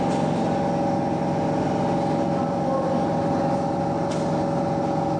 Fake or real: real